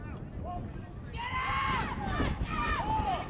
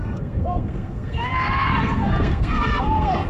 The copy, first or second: second